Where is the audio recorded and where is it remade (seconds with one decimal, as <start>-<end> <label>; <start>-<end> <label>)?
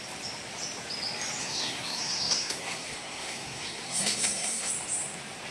0.0-1.4 recorded; 1.4-4.7 remade; 4.7-5.5 recorded